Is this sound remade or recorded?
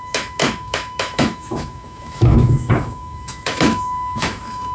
remade